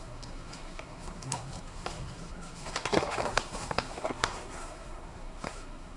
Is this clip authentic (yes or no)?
no